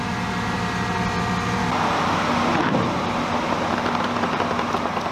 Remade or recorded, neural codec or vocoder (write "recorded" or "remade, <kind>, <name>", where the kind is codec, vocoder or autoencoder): recorded